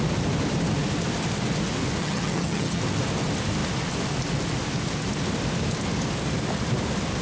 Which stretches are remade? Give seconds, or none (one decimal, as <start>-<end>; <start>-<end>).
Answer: 2.0-2.8